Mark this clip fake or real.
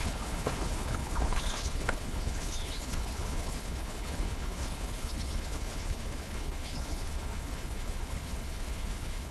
fake